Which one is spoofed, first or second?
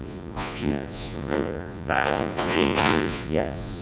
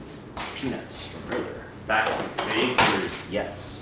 first